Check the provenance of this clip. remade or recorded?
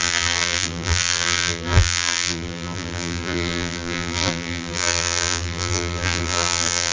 remade